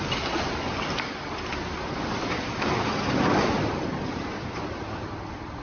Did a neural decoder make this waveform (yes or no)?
yes